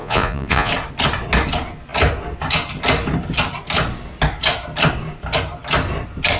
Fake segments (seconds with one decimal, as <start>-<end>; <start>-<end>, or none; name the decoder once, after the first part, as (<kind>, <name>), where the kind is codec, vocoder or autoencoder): 0.0-0.7 (vocoder, Vocos)